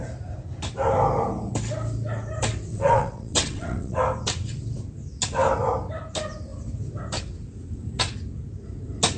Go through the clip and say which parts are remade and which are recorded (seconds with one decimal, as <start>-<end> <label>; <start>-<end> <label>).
0.0-2.7 recorded; 2.7-4.0 remade; 4.0-9.2 recorded